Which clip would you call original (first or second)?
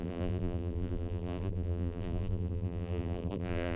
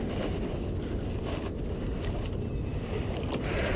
second